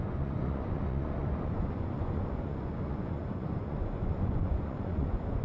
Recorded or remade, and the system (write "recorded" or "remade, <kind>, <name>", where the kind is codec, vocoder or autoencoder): remade, vocoder, Vocos